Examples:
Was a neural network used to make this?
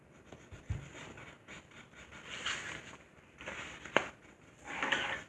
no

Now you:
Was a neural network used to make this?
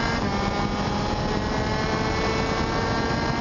no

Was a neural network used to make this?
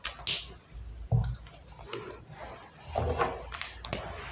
no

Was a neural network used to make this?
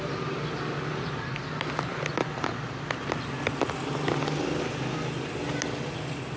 no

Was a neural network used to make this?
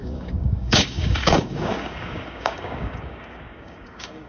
yes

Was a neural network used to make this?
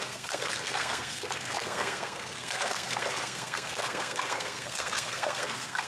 yes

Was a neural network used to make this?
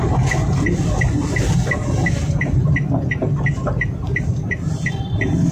no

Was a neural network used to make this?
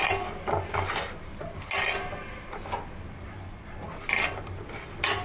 no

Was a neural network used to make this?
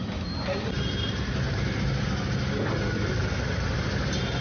no